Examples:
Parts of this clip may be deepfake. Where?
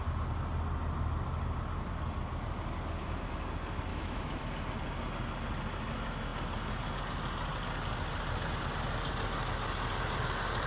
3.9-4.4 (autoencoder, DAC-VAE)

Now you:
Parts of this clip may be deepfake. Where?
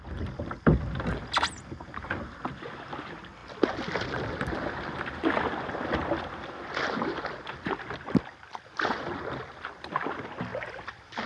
none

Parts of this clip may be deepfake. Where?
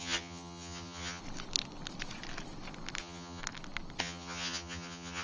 0.0-1.2 (vocoder, HiFi-GAN); 3.0-3.4; 4.0-5.2